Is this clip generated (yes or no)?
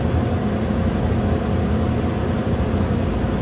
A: no